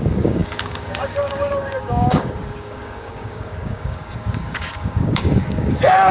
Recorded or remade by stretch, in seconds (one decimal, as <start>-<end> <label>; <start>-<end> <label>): 0.0-6.1 remade

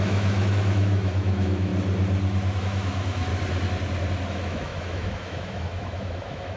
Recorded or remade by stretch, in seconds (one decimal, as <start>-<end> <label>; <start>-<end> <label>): 0.0-1.7 remade; 1.7-2.6 recorded; 2.6-3.3 remade; 3.3-4.3 recorded; 4.3-6.6 remade

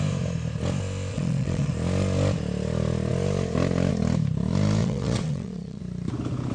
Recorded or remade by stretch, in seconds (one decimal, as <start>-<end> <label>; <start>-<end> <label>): 0.0-1.1 recorded; 1.1-1.7 remade; 1.7-4.8 recorded; 4.8-5.8 remade; 5.8-6.5 recorded

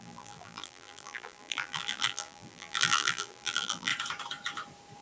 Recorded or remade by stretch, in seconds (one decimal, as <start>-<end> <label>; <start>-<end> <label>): 0.0-3.9 remade; 3.9-5.0 recorded

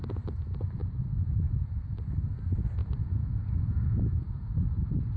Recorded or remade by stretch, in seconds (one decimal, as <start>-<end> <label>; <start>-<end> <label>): 0.0-0.8 recorded; 0.8-1.7 remade; 1.7-2.8 recorded; 2.8-5.2 remade

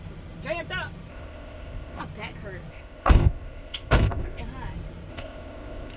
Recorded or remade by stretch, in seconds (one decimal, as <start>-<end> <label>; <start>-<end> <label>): 0.0-1.1 recorded; 1.1-2.0 remade; 2.0-2.7 recorded; 2.7-4.4 remade; 4.4-5.1 recorded; 5.1-6.0 remade

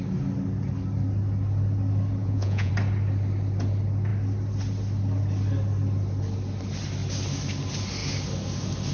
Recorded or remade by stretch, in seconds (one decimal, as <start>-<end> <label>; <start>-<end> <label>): 0.0-2.2 recorded; 2.2-2.7 remade; 2.7-8.9 recorded